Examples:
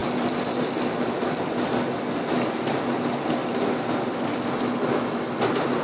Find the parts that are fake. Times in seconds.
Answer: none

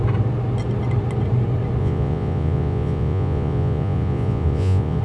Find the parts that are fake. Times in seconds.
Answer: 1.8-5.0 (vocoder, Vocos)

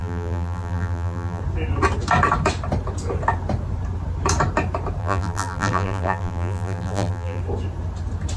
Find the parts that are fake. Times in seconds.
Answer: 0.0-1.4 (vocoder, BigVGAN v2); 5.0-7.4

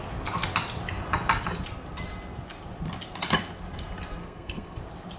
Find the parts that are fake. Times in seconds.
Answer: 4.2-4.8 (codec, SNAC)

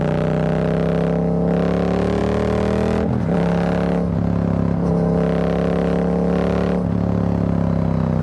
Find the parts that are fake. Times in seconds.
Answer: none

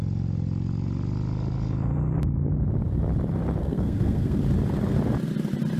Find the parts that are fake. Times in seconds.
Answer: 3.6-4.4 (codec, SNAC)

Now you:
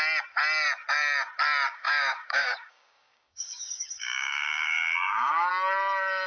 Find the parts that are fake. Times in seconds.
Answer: 1.7-5.5 (codec, DAC)

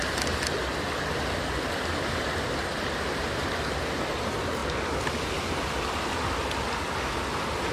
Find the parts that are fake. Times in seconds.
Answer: none